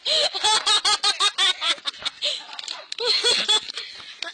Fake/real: real